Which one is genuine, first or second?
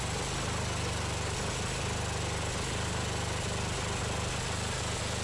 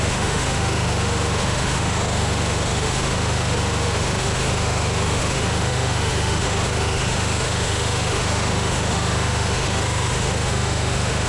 first